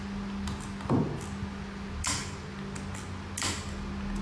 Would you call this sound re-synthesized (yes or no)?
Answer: no